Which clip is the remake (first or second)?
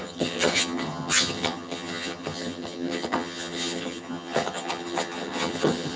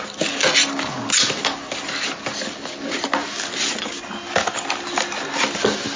first